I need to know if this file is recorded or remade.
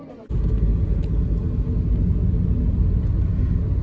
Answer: recorded